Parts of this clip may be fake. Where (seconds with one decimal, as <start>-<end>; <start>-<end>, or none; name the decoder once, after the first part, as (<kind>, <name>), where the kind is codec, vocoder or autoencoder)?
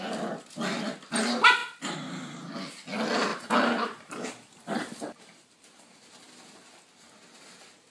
1.6-2.5 (vocoder, BigVGAN v2); 3.3-6.0